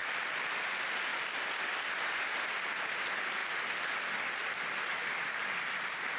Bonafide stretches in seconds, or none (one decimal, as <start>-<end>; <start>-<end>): 1.1-2.5; 3.4-4.1; 5.0-6.2